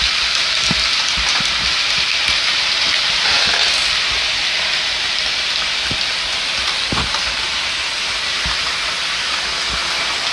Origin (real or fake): real